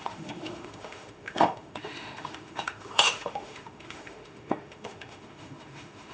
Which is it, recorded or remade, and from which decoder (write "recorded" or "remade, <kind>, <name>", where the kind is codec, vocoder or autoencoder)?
remade, autoencoder, DAC-VAE